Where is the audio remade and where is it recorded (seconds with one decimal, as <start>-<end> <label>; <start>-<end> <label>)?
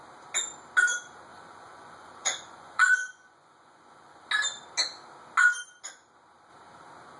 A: 0.0-1.3 recorded; 1.3-4.3 remade; 4.3-7.2 recorded